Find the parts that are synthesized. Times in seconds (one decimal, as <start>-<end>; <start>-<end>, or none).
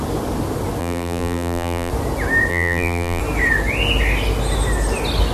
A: 0.8-1.9; 2.5-3.2